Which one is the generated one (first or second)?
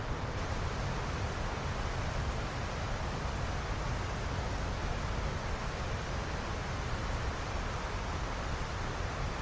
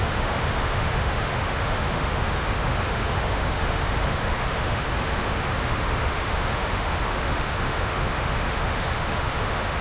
second